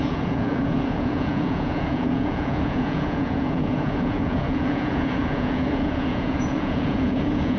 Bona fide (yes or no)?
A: no